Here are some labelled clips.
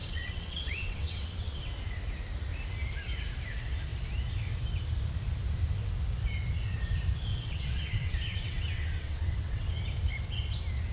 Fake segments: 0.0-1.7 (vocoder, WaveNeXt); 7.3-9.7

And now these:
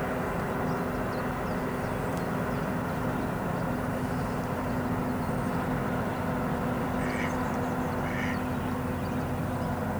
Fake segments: 2.1-3.9 (vocoder, BigVGAN v2); 6.1-7.0

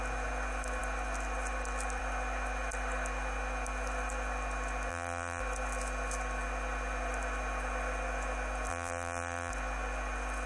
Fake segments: 4.9-5.4 (vocoder, BigVGAN v2); 8.7-9.5

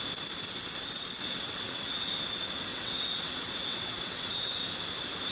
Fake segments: 1.0-2.1 (vocoder, WaveNeXt); 2.7-4.6

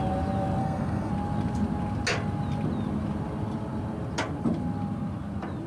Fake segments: 0.6-1.1 (codec, SNAC)

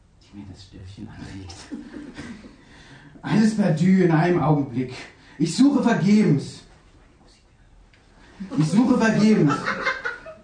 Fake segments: 0.8-2.2 (vocoder, WaveNeXt)